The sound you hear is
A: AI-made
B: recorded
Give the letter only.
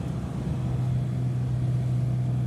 B